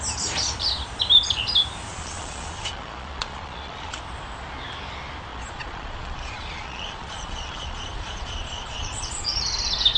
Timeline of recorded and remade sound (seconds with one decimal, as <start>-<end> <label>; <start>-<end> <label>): 0.0-1.9 recorded; 1.9-4.0 remade; 4.0-5.3 recorded; 5.3-9.4 remade; 9.4-10.0 recorded